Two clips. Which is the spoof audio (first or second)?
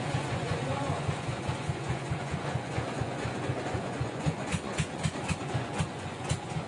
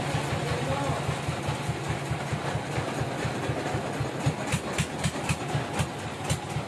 first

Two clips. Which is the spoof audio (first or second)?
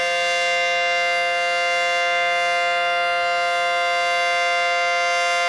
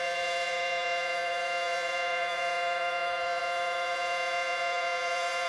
second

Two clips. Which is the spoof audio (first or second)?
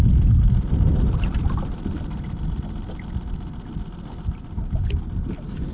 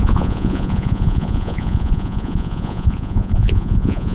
second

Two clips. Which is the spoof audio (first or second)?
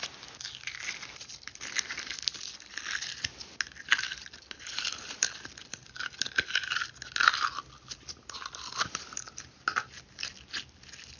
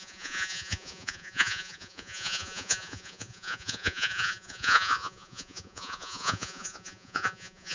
second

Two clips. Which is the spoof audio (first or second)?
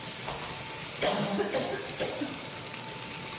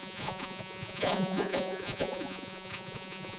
second